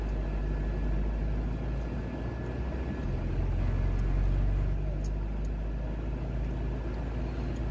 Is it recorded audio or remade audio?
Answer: recorded